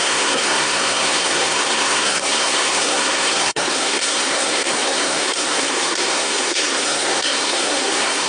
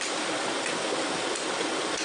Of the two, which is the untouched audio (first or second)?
second